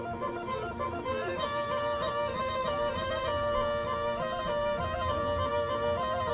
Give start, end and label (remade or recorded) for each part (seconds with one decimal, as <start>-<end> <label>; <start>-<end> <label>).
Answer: 0.0-6.3 recorded